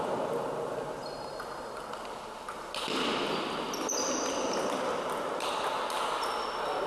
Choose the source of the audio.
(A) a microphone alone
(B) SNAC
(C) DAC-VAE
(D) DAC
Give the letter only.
A